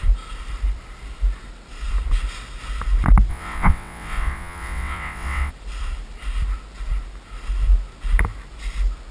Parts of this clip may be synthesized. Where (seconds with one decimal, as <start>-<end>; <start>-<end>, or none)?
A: 3.3-5.5